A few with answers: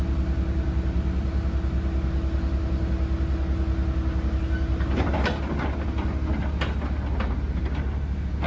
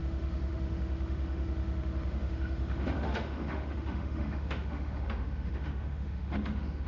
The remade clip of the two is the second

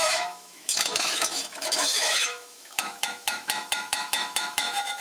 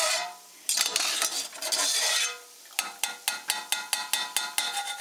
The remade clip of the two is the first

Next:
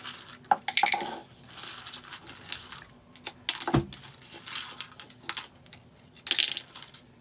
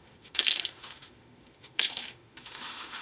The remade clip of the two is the second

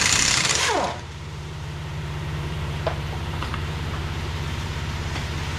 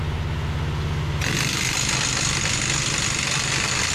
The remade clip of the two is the first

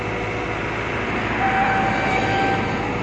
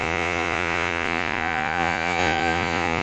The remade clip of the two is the second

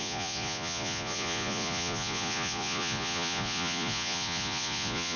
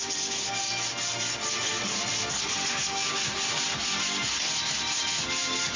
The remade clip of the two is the first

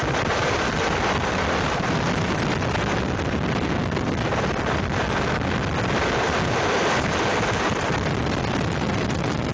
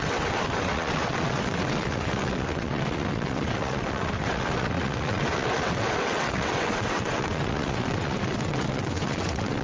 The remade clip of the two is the second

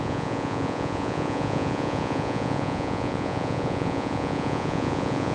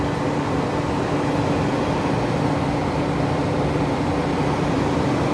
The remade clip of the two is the first